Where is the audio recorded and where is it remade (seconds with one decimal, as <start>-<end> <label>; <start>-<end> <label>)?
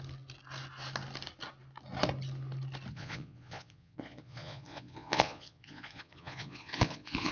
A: 0.0-2.9 recorded; 2.9-7.3 remade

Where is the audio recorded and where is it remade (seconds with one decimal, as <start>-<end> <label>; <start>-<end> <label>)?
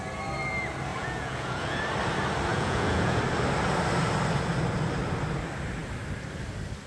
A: 0.0-0.9 recorded; 0.9-1.8 remade; 1.8-2.5 recorded; 2.5-3.2 remade; 3.2-6.9 recorded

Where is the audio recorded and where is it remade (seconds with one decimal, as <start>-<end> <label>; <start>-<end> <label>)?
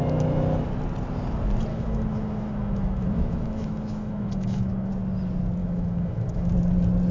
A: 0.0-1.7 recorded; 1.7-4.9 remade; 4.9-5.6 recorded; 5.6-6.5 remade; 6.5-7.1 recorded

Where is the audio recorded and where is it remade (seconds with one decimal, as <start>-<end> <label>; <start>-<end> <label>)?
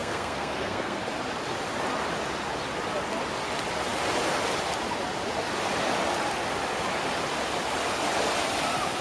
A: 0.0-1.0 remade; 1.0-9.0 recorded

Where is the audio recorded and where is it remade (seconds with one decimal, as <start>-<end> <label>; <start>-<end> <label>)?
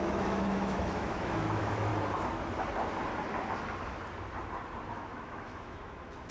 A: 0.0-1.9 remade; 1.9-4.9 recorded; 4.9-6.3 remade